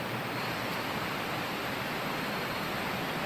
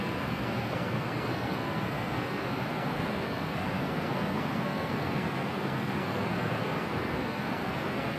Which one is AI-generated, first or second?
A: second